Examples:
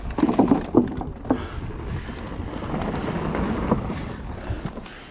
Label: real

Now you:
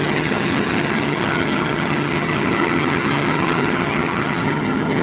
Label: fake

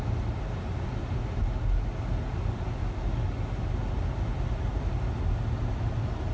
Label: real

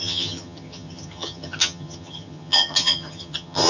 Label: fake